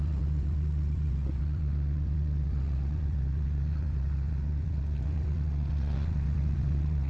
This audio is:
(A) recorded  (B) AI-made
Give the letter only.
B